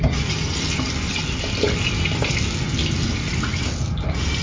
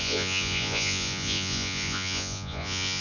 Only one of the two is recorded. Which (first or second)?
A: first